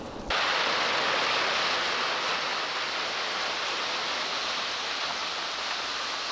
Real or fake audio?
real